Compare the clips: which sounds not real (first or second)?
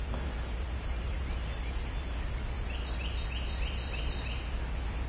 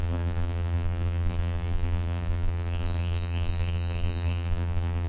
second